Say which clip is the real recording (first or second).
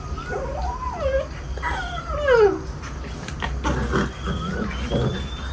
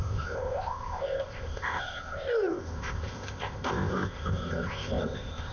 first